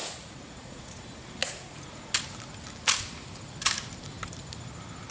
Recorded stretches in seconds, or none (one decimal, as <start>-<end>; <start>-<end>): 1.0-1.4; 2.1-5.1